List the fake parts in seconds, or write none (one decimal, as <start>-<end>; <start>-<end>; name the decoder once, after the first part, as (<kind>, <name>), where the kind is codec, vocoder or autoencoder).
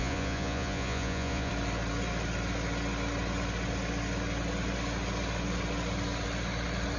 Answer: 0.0-1.5 (vocoder, Vocos)